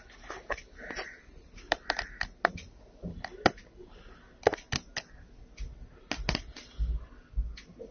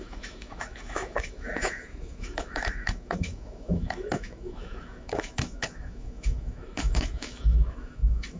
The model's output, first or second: second